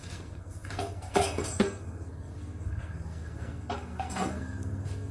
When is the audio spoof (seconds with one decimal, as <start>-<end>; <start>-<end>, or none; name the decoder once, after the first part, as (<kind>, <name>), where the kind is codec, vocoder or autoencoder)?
0.0-5.1 (codec, SNAC)